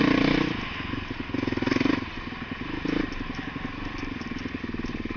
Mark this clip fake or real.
real